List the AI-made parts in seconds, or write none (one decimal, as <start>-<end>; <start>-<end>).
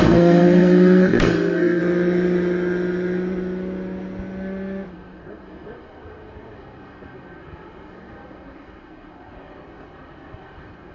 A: 0.0-1.8; 4.9-10.9